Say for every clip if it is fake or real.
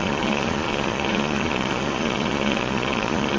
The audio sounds fake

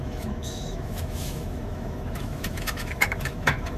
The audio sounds fake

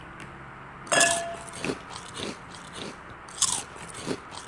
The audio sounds real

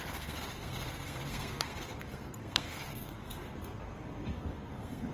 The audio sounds fake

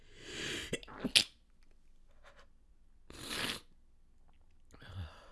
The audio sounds real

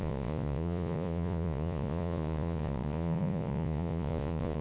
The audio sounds fake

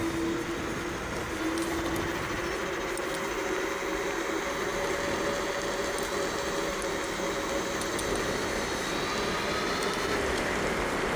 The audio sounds real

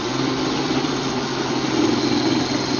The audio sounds real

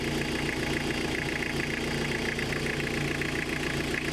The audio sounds real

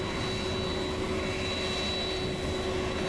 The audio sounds real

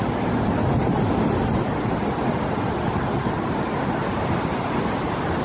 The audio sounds real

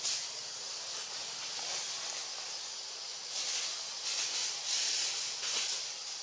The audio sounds real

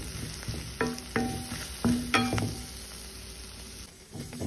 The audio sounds real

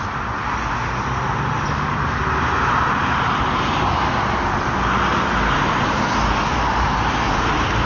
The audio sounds real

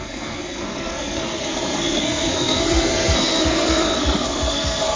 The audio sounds fake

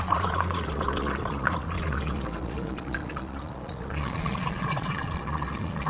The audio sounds fake